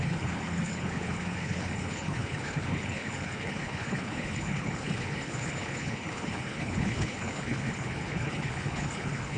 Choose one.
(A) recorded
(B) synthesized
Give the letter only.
B